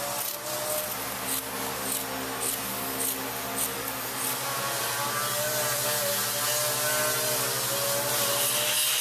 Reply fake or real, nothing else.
real